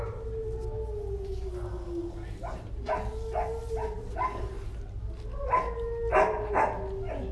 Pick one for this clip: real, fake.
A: real